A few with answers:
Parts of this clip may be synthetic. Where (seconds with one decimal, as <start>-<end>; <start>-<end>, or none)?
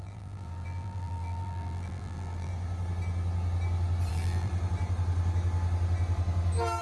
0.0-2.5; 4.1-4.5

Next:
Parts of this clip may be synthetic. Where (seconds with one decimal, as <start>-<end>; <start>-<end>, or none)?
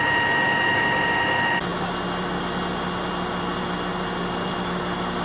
none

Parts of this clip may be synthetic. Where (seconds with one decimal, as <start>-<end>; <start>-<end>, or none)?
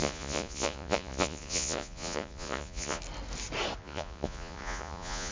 0.0-3.0; 3.8-5.3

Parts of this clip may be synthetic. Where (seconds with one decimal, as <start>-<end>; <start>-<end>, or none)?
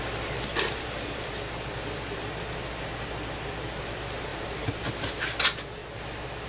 0.5-1.3; 4.3-5.2